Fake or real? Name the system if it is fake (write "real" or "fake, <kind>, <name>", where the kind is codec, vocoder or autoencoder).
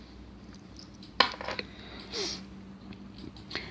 real